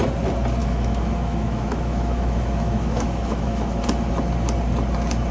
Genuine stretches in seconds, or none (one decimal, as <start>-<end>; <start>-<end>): 0.0-0.6; 3.8-5.3

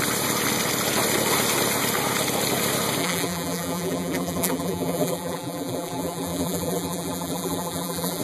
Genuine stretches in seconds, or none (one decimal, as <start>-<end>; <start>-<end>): 0.0-3.0

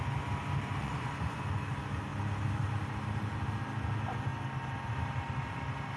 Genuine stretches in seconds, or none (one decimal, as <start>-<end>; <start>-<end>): 0.0-0.8; 1.4-6.0

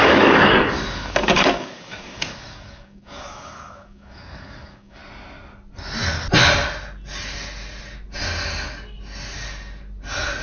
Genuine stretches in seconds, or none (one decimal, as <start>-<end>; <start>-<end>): 5.0-10.4

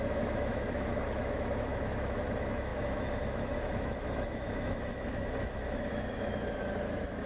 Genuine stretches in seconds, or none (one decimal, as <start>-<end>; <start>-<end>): none

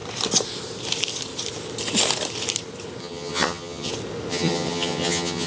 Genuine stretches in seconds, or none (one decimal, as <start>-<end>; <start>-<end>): 0.0-3.0; 3.9-4.3

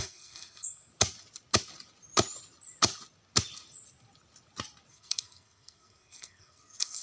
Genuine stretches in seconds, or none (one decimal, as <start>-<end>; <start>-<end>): 0.9-4.9

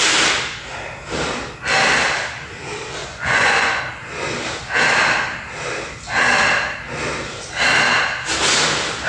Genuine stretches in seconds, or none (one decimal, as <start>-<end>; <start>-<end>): 0.0-3.0; 3.8-9.1